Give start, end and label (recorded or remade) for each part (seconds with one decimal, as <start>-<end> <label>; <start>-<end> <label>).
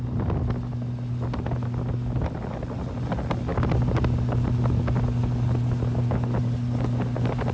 0.0-7.5 recorded